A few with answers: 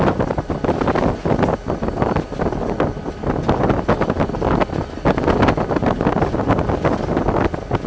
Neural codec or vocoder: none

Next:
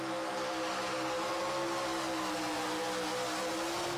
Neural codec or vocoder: none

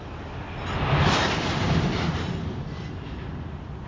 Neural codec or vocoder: none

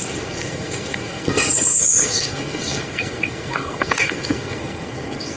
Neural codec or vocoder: codec, SNAC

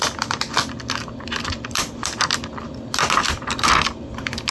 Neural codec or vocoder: none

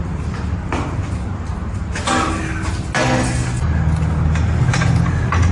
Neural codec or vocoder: none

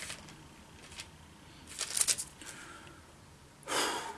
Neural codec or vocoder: none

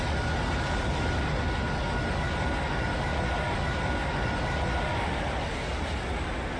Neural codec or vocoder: none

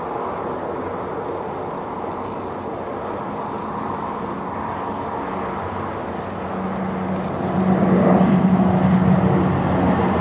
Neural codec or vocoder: none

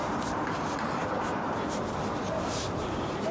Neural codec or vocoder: vocoder, BigVGAN v2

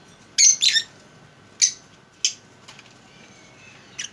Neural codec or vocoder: none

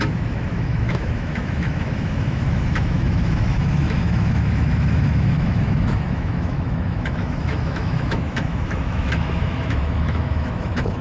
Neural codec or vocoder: autoencoder, DAC-VAE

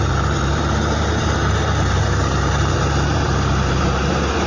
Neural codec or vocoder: vocoder, BigVGAN v2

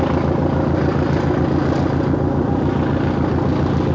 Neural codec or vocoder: none